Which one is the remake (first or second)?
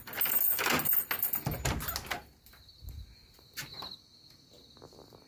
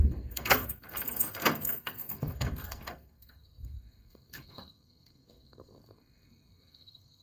second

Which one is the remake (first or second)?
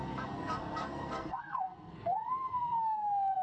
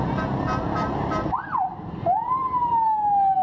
first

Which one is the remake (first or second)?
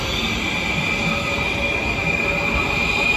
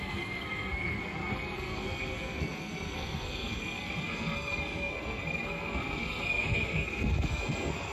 second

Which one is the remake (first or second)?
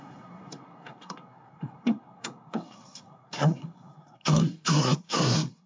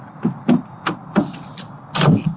first